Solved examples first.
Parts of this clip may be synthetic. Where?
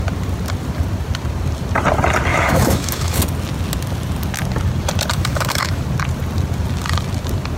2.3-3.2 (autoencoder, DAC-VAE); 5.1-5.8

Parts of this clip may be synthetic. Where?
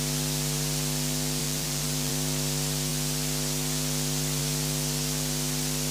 1.4-2.1 (vocoder, BigVGAN v2)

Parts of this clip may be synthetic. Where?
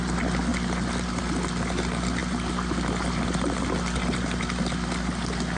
none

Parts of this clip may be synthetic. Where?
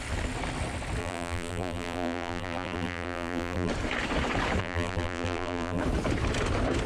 1.0-3.7 (vocoder, BigVGAN v2); 4.6-5.8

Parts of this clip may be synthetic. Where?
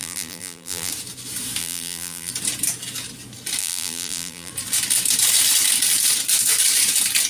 0.0-0.9 (vocoder, BigVGAN v2); 1.6-2.3; 3.6-4.5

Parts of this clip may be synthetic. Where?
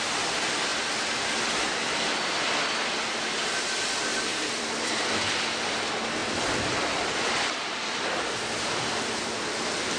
0.7-1.7 (vocoder, BigVGAN v2); 4.3-5.4; 6.2-8.2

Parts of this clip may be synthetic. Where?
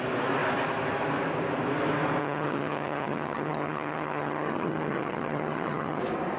2.2-6.0 (vocoder, HiFi-GAN)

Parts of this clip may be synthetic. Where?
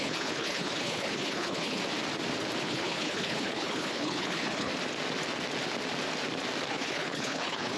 0.0-1.8 (codec, HILCodec); 2.6-4.7; 6.7-7.8